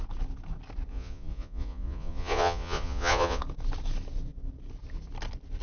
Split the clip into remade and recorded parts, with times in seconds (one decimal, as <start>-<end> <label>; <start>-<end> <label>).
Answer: 0.0-0.9 recorded; 0.9-3.4 remade; 3.4-5.6 recorded